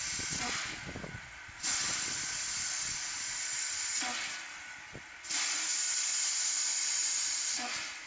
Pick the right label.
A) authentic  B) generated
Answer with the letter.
A